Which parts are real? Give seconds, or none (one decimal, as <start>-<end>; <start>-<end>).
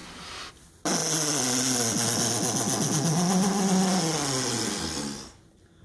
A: 0.0-5.8